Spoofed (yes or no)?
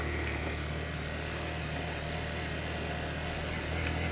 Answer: no